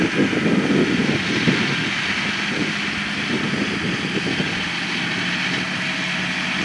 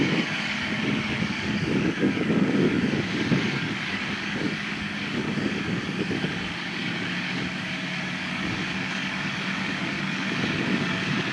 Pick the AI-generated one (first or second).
second